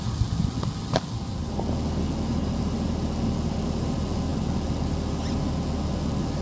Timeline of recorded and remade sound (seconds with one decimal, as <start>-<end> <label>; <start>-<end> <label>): 0.0-6.4 recorded